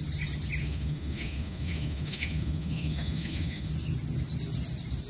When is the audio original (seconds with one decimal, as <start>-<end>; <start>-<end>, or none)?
0.0-0.6; 3.7-5.1